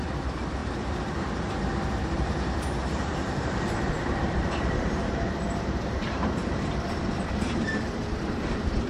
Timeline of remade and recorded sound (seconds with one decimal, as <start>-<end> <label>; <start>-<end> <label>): 0.0-8.9 remade